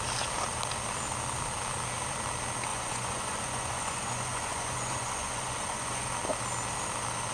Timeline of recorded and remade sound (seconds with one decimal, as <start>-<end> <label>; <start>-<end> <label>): 0.0-2.7 recorded; 2.7-6.1 remade; 6.1-7.3 recorded